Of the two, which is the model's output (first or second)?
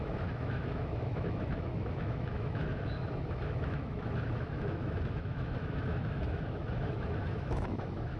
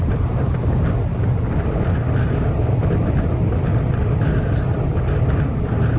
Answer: first